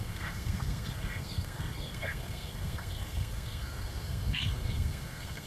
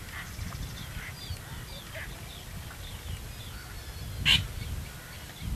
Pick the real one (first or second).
second